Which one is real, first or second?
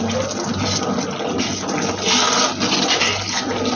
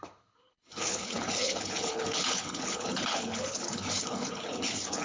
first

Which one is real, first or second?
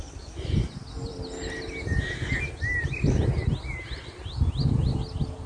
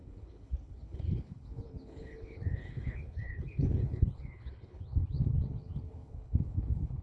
first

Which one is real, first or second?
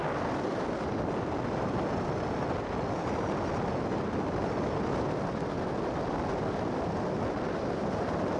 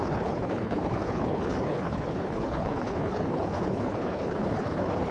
first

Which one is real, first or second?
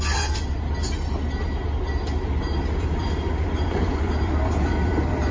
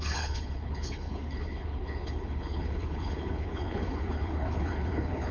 first